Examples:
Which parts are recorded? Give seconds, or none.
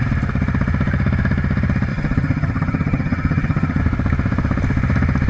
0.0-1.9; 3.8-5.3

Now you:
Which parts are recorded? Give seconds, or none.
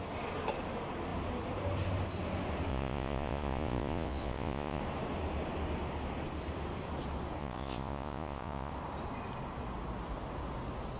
0.0-2.7; 4.8-7.4; 8.7-11.0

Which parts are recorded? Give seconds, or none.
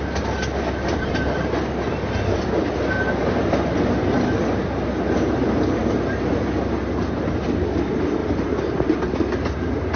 0.0-10.0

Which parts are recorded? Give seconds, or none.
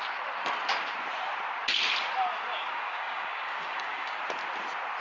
0.0-2.5; 4.2-5.0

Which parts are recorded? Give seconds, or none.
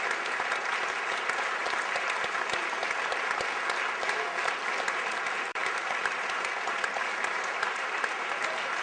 2.8-4.0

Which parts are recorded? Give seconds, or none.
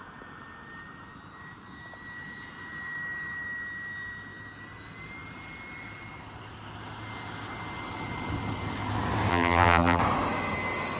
0.0-9.3; 10.0-11.0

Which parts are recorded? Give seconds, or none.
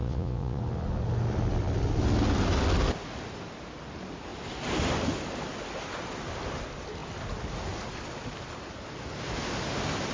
0.6-10.1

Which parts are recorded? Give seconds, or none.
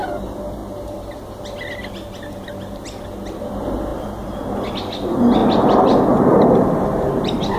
0.0-5.4